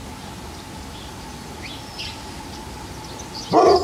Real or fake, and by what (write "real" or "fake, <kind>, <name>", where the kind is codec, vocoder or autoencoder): real